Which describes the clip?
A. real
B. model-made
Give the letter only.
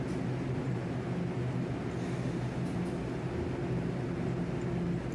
A